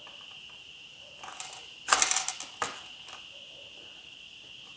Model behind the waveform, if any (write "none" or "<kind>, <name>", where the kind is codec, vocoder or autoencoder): none